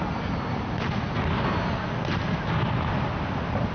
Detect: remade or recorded recorded